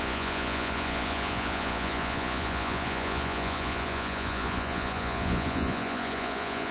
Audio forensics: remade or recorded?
remade